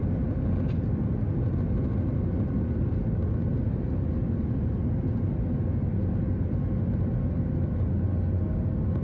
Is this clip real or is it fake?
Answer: real